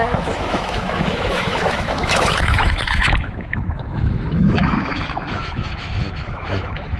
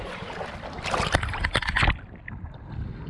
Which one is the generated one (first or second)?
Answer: first